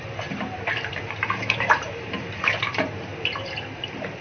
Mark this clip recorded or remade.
remade